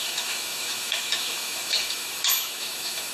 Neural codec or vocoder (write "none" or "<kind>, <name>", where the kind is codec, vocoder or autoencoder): autoencoder, DAC-VAE